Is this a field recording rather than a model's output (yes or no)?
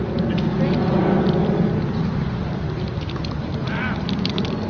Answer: yes